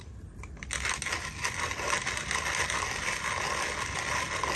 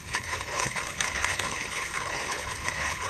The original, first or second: first